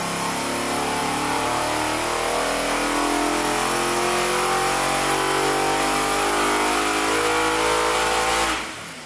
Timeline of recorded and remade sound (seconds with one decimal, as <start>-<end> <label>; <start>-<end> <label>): 0.0-1.0 recorded; 1.0-1.6 remade; 1.6-9.1 recorded